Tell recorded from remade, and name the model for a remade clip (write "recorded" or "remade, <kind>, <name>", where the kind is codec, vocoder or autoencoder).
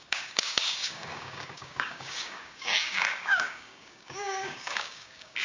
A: remade, codec, DAC